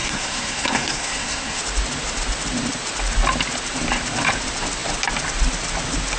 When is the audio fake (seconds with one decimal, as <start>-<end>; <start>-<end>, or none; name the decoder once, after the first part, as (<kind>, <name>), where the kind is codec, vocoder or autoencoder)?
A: 0.0-1.6 (codec, SNAC)